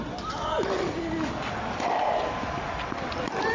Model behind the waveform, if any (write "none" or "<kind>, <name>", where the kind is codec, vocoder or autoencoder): none